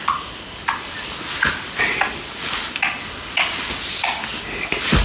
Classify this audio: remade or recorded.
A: recorded